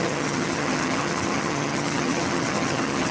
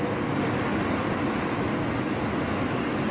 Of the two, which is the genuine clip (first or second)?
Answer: second